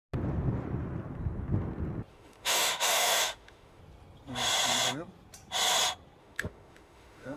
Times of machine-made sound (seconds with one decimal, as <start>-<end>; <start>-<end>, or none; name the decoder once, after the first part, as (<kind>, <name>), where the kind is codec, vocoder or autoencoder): 2.1-3.8 (autoencoder, DAC-VAE); 6.2-7.4